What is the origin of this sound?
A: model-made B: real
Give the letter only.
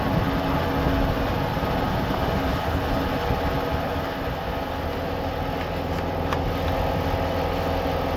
B